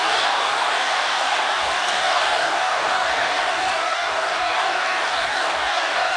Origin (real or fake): fake